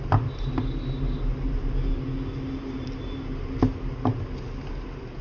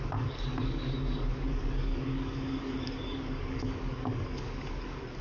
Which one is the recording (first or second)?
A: first